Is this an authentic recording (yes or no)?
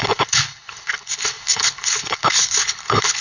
no